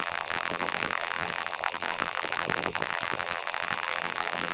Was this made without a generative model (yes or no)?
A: no